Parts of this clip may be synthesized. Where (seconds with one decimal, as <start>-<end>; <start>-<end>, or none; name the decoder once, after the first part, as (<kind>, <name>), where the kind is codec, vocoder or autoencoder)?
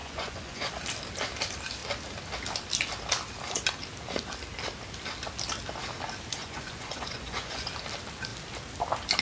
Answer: 0.0-0.7 (vocoder, Vocos); 6.4-7.7